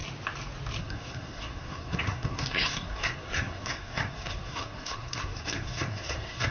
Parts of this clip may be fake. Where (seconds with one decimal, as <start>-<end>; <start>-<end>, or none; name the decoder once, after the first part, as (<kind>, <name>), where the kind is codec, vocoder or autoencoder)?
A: 0.8-6.5 (codec, SNAC)